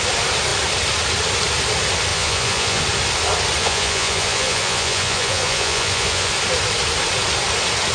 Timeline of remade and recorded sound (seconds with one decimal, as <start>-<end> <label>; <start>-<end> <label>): 0.0-2.1 recorded; 2.1-2.8 remade; 2.8-3.6 recorded; 3.6-6.3 remade; 6.3-7.9 recorded